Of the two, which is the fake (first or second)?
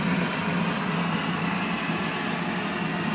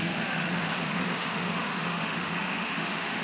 second